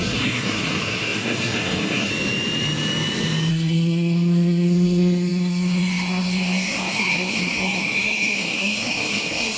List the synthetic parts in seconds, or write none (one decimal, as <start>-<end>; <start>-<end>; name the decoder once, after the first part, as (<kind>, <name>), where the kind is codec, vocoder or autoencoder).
0.0-2.1 (codec, SNAC); 3.5-9.6